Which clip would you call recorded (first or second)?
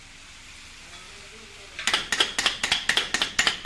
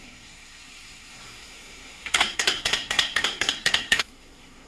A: first